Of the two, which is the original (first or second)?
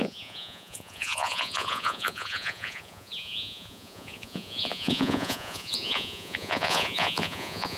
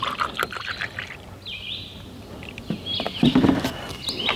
second